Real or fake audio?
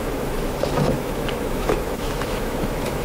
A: fake